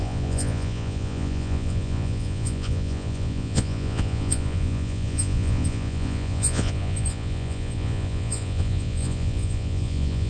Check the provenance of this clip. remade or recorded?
remade